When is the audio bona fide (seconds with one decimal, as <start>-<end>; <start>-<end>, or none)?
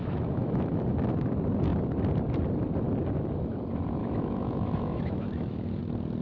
0.8-4.0; 5.8-6.2